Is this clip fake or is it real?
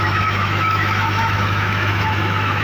fake